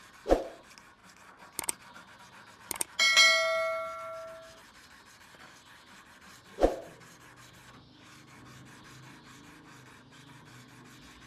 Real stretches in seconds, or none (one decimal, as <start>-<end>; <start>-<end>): 0.0-11.3